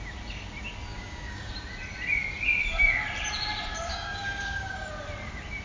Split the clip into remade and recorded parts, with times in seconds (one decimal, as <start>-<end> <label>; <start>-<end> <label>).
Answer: 0.0-0.9 recorded; 0.9-1.5 remade; 1.5-3.9 recorded; 3.9-4.9 remade; 4.9-5.6 recorded